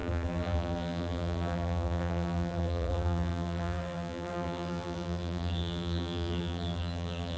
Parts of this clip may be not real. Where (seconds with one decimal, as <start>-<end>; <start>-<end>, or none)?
0.0-7.4